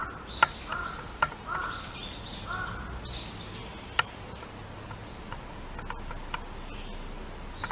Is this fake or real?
real